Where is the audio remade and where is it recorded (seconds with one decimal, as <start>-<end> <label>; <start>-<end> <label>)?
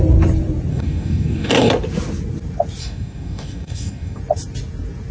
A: 0.0-0.7 recorded; 0.7-1.7 remade; 1.7-2.8 recorded; 2.8-4.2 remade; 4.2-5.1 recorded